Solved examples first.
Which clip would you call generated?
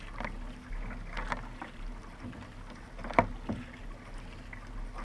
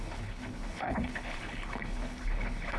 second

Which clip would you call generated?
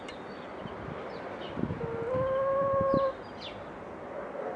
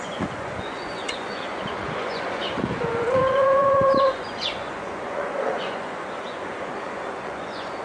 second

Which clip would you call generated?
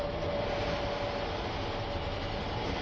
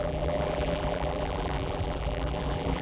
second